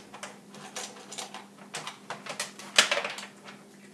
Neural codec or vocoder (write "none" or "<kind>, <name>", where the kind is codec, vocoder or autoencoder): none